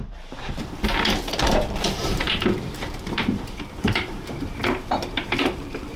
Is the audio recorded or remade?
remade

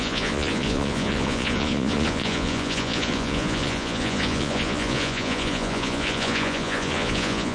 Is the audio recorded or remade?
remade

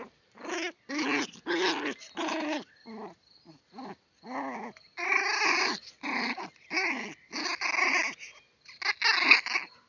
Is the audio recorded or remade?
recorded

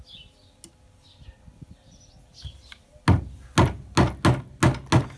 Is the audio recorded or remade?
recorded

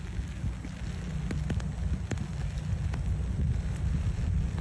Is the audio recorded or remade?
recorded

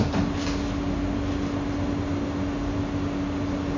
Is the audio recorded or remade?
recorded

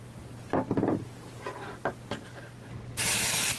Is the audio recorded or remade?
recorded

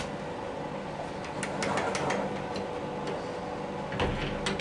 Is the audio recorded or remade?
recorded